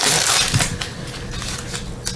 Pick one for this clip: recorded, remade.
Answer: recorded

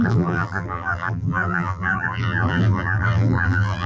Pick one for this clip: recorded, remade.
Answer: remade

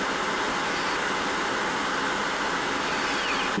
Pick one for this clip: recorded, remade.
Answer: recorded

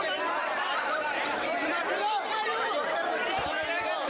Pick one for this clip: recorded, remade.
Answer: remade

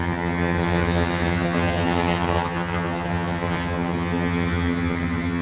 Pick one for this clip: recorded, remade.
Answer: remade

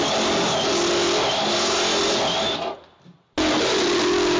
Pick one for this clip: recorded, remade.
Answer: recorded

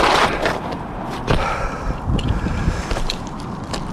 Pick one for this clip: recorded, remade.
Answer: recorded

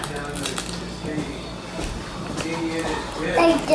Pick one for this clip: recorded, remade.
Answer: recorded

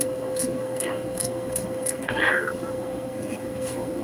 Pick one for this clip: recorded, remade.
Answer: remade